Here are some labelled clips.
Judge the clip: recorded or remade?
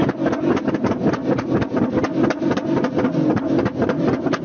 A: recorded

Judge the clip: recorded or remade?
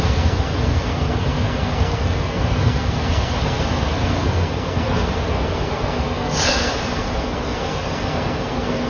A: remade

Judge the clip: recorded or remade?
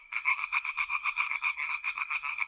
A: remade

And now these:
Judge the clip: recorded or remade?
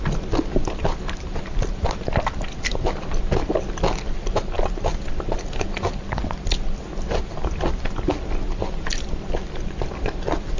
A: recorded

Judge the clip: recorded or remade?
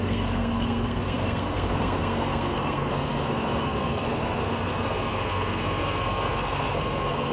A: remade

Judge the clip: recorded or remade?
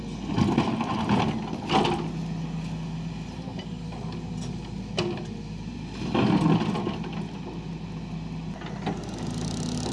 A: recorded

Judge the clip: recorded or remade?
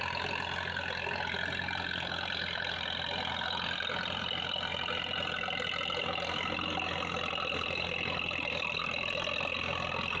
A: recorded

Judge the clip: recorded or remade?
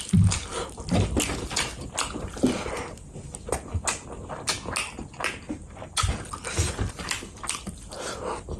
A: recorded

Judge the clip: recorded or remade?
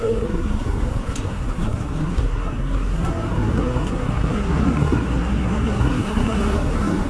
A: remade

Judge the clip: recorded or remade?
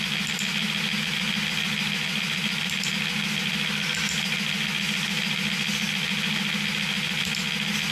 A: recorded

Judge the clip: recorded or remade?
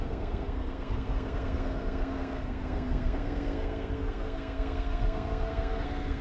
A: remade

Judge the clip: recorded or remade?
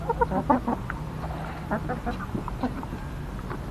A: recorded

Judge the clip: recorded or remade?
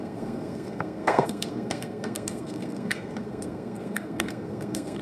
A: remade